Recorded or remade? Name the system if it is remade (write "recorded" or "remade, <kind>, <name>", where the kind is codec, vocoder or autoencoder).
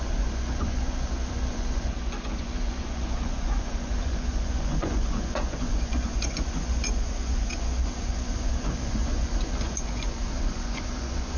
remade, vocoder, Vocos